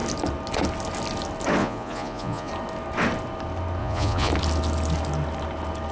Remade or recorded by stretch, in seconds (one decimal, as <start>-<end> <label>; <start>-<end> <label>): 0.0-1.6 recorded; 1.6-2.5 remade; 2.5-3.8 recorded; 3.8-4.3 remade; 4.3-5.9 recorded

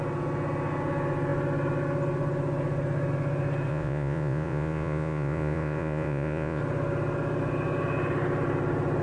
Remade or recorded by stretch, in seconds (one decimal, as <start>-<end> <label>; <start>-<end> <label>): 0.0-3.7 recorded; 3.7-6.6 remade; 6.6-9.0 recorded